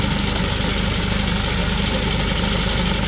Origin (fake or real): real